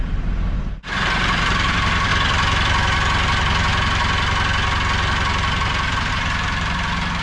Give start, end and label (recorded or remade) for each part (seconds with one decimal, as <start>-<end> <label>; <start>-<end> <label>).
0.0-2.1 remade; 2.1-6.1 recorded; 6.1-7.2 remade